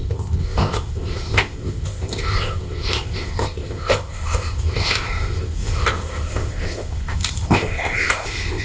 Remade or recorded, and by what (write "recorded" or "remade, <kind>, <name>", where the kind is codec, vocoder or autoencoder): remade, codec, ZipCodec